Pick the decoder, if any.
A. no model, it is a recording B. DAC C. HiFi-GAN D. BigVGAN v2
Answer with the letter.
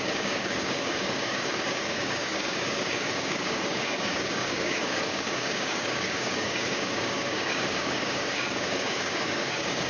B